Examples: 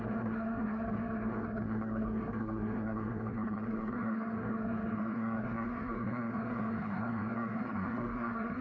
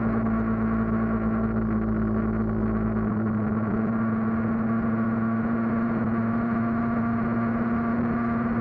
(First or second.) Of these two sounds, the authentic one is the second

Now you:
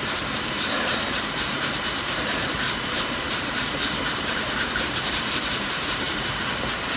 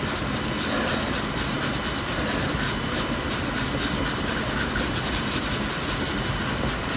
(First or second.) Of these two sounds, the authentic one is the second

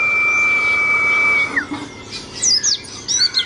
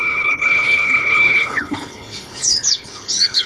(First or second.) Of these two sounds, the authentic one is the first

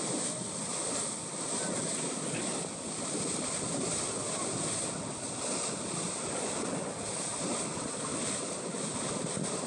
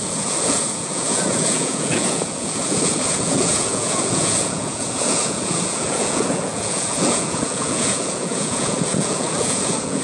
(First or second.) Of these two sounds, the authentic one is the first